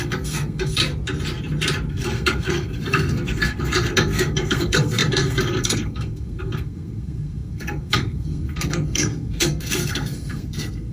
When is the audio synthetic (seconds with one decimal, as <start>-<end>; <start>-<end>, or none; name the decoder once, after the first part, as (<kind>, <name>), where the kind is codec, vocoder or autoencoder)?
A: 0.0-0.8 (codec, SNAC); 1.9-10.9